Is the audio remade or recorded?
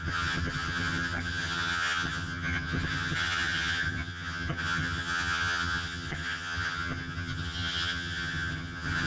remade